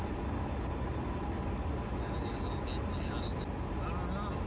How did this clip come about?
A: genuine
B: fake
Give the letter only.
A